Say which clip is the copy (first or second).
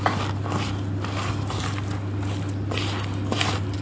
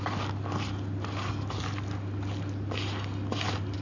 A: first